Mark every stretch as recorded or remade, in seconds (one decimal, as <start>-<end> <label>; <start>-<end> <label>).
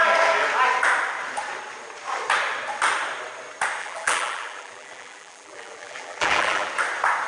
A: 0.0-3.8 recorded; 3.8-6.7 remade; 6.7-7.3 recorded